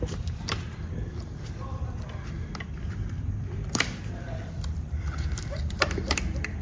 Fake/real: fake